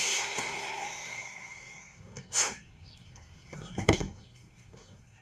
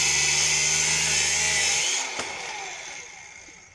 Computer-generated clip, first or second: first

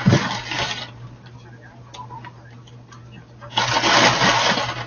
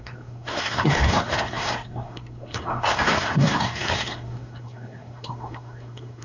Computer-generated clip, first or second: second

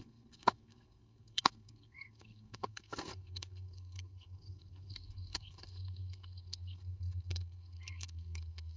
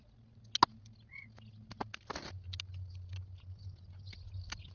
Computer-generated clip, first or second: first